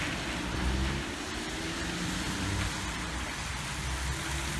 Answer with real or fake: real